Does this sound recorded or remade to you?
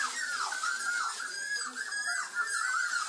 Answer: recorded